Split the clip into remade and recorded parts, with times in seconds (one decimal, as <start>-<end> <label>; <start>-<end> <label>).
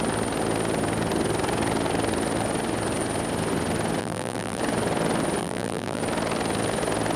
0.0-4.0 recorded; 4.0-4.6 remade; 4.6-5.4 recorded; 5.4-6.0 remade; 6.0-7.2 recorded